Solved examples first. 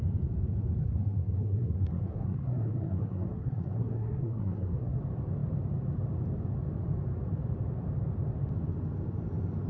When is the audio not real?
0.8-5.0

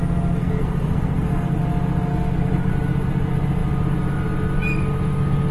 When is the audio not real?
0.4-1.6; 2.1-2.7

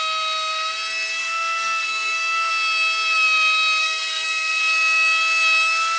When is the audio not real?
1.2-2.5; 3.8-4.6

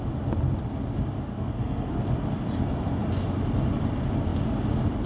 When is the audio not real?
1.3-1.9

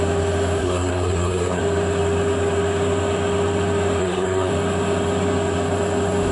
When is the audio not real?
0.6-1.6; 4.0-4.5

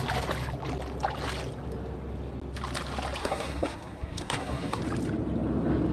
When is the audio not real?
3.2-4.8